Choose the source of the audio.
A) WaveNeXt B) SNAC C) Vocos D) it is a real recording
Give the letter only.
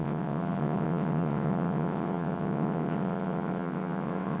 A